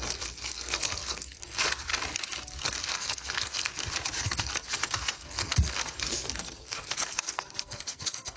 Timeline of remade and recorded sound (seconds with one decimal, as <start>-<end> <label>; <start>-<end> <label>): 0.0-1.9 remade; 1.9-2.6 recorded; 2.6-3.7 remade; 3.7-4.2 recorded; 4.2-8.4 remade